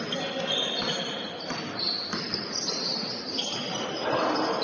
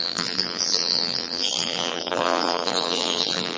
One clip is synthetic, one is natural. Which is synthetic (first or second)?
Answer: second